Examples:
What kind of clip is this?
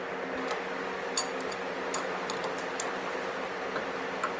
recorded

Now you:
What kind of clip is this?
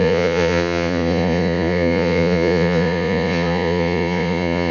remade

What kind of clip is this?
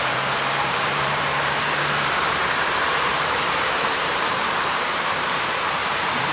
remade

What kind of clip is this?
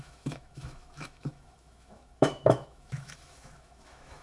remade